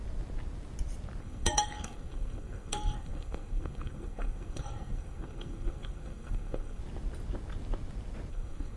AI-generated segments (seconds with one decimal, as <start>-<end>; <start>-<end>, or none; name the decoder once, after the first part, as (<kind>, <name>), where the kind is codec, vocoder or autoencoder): 1.2-6.8 (codec, SNAC); 8.3-8.8